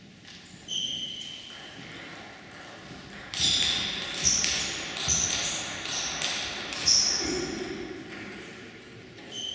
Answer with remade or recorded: recorded